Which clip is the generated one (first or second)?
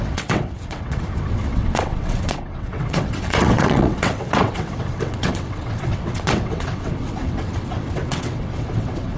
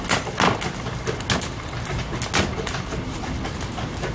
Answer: first